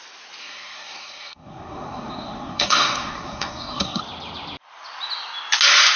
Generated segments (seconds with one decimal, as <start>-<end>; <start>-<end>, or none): 0.4-4.0